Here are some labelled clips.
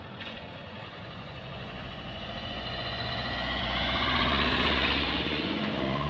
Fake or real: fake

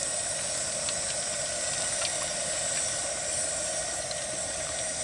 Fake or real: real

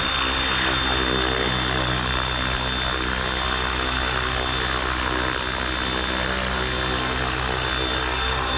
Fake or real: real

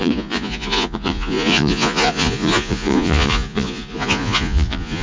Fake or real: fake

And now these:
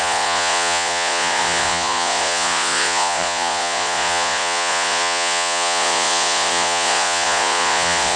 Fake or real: fake